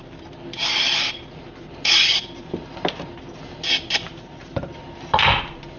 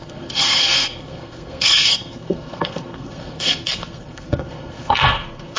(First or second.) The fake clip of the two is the second